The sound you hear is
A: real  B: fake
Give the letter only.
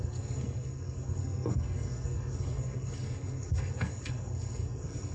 B